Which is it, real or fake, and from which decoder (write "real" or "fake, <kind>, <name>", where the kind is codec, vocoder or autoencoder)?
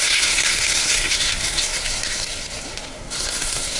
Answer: fake, codec, SNAC